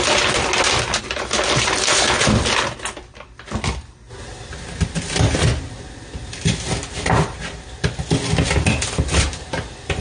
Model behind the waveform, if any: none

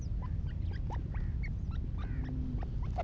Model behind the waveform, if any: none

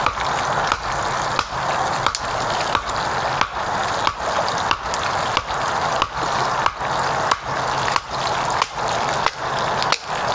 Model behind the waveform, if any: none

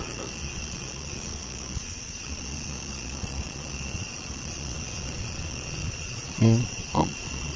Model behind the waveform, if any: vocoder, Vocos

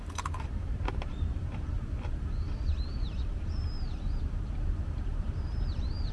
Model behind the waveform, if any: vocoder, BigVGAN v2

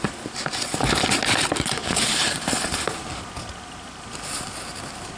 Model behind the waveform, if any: none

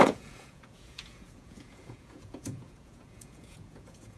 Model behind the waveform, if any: vocoder, Vocos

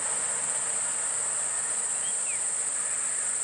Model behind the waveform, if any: none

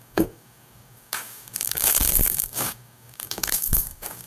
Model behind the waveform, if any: codec, DAC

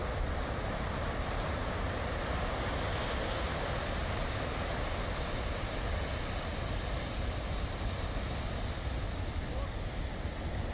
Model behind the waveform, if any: none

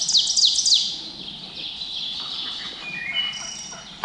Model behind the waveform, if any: none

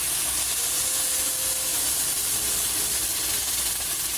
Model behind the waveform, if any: none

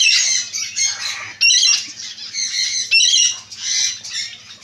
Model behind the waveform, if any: none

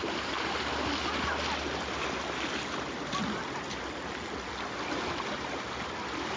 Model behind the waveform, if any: none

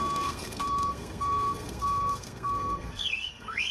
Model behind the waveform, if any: codec, SNAC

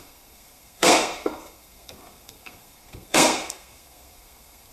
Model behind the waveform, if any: codec, SNAC